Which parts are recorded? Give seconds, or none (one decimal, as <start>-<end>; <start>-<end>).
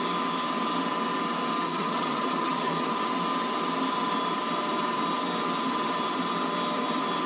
0.0-1.7; 2.9-7.3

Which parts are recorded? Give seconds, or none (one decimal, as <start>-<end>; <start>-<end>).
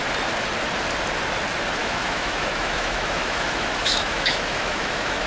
0.0-1.8